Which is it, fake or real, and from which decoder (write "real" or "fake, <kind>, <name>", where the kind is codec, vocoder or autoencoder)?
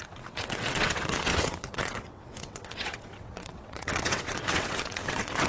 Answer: fake, vocoder, WaveNeXt